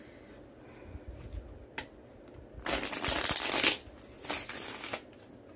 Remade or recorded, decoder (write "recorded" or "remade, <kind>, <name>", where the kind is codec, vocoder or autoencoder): recorded